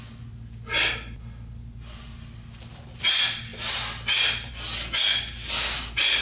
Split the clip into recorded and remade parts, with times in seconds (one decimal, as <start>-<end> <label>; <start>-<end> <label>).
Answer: 0.0-6.2 recorded